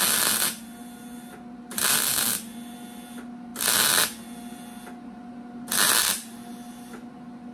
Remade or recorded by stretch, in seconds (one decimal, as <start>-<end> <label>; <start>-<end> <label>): 0.0-7.5 recorded